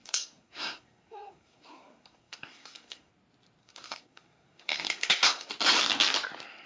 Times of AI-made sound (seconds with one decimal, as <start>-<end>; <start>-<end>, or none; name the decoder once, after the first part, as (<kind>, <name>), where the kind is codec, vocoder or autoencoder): 0.0-3.1 (codec, SNAC); 3.6-5.5